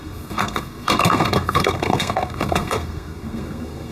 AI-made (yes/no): yes